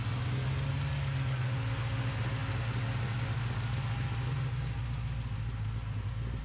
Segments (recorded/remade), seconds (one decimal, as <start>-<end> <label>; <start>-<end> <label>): 0.0-6.4 recorded